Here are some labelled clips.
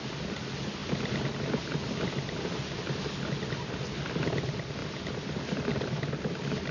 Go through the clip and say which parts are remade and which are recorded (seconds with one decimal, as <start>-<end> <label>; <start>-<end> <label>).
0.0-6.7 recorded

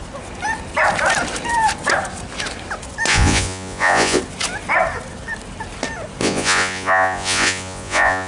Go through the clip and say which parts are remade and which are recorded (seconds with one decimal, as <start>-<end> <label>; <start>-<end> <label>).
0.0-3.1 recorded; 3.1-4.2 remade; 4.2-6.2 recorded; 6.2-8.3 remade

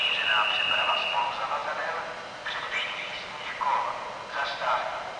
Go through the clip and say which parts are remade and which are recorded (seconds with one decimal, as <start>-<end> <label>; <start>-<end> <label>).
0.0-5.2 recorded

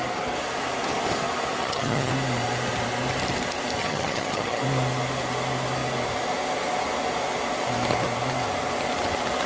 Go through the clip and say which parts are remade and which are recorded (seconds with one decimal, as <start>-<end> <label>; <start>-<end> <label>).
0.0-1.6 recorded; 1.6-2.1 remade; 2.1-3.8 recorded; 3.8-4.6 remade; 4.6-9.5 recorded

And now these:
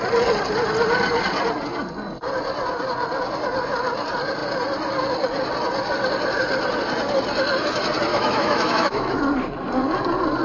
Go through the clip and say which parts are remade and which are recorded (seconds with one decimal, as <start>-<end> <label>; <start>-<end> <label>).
0.0-8.1 recorded; 8.1-9.2 remade; 9.2-10.4 recorded